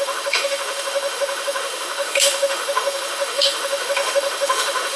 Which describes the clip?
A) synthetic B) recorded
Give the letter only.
A